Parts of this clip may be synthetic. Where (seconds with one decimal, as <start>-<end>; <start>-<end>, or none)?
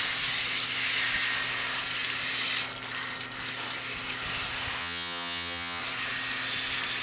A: 4.8-5.8